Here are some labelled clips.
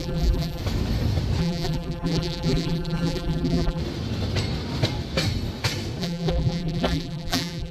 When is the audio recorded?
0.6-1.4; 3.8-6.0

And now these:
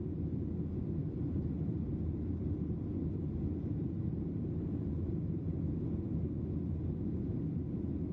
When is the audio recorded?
0.0-1.0; 4.4-8.1

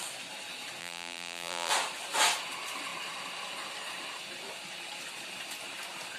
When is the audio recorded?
0.0-0.8; 1.7-6.2

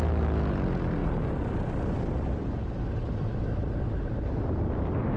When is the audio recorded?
0.0-3.3; 4.4-5.2

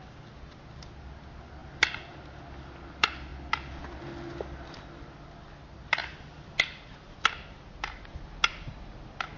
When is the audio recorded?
0.0-6.0; 6.6-9.4